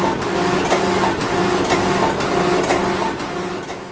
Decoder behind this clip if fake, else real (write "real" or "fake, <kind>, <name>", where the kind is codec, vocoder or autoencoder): real